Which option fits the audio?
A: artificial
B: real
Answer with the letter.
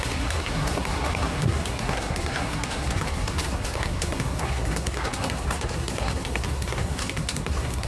A